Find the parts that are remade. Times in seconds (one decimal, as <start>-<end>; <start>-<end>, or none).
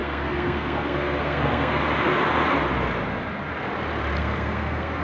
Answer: 0.0-1.8; 4.2-5.0